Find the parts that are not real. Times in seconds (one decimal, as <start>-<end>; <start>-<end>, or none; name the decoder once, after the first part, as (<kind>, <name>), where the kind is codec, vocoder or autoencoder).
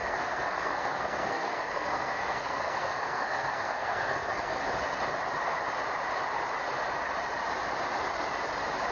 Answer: 0.0-4.6 (codec, SNAC)